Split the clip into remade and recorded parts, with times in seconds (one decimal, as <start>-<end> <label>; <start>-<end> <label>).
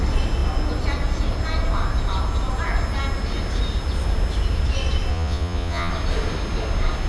0.0-5.1 recorded; 5.1-5.9 remade; 5.9-7.1 recorded